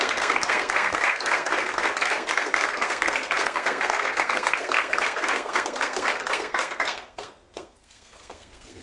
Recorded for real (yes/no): no